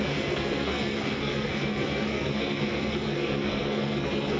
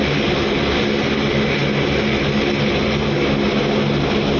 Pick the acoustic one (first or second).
second